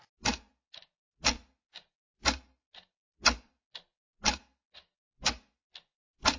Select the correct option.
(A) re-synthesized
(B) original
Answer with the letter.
B